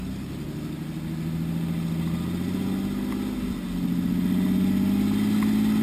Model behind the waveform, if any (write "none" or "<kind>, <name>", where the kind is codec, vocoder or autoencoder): none